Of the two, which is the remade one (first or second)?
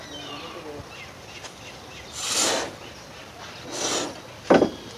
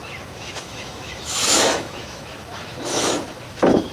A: second